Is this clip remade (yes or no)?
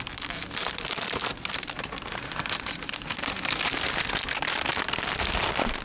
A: yes